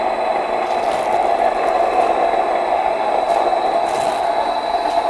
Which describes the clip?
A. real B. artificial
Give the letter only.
A